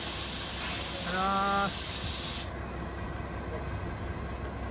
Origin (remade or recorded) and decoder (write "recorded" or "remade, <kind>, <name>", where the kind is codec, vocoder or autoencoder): recorded